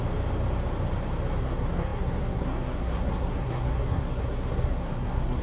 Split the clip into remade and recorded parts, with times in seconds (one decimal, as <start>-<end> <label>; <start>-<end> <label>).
0.0-1.4 recorded; 1.4-5.4 remade